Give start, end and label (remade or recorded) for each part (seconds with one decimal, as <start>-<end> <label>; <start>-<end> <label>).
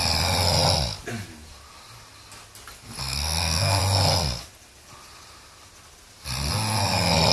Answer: 0.0-3.0 recorded; 3.0-3.8 remade; 3.8-7.3 recorded